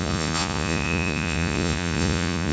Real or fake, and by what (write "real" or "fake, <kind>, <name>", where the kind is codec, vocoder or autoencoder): fake, vocoder, Vocos